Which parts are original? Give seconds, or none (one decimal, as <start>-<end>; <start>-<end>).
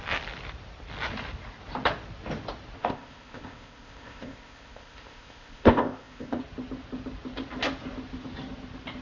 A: 0.0-2.8; 6.4-9.0